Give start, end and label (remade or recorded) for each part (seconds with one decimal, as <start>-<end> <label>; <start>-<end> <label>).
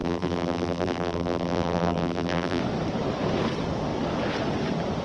0.0-2.6 remade; 2.6-5.0 recorded